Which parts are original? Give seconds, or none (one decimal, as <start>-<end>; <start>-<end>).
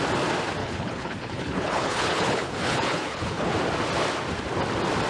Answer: 0.0-0.6; 3.5-5.1